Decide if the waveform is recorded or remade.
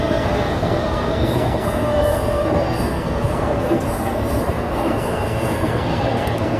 remade